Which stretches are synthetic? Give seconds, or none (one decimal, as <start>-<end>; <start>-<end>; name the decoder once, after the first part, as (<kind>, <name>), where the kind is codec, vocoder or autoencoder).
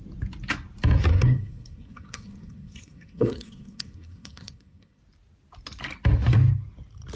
1.1-5.0 (codec, SNAC)